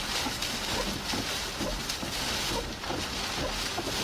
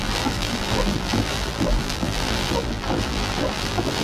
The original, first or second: first